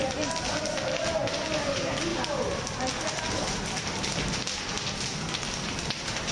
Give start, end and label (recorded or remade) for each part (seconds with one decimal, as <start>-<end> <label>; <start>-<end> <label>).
0.0-6.3 recorded